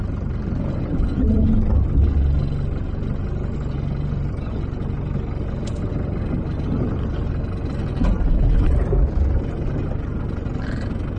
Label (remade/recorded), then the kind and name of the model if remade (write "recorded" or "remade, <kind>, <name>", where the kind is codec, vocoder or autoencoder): recorded